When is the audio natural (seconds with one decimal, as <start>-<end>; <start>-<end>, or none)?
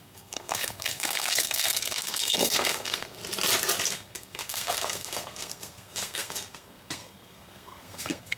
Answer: 3.2-3.9